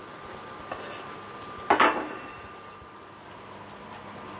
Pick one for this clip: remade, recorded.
recorded